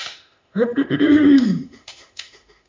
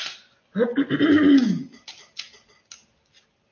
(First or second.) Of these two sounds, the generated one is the first